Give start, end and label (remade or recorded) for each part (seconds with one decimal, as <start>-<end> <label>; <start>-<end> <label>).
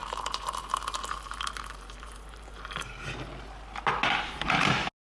0.0-3.0 remade; 3.0-5.0 recorded